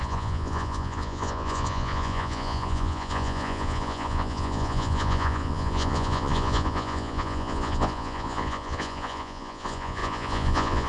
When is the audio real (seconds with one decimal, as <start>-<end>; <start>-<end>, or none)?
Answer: none